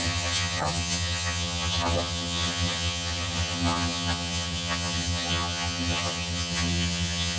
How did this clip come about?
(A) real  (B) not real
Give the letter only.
B